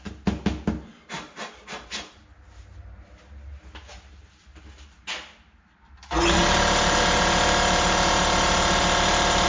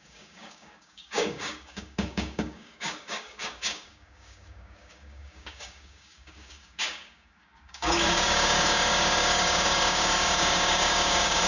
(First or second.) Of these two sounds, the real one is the first